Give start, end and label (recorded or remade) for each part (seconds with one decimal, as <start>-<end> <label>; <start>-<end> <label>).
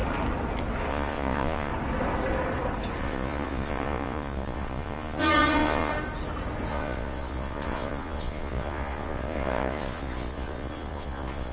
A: 0.0-0.9 recorded; 0.9-1.7 remade; 1.7-3.0 recorded; 3.0-5.9 remade; 5.9-6.7 recorded; 6.7-11.5 remade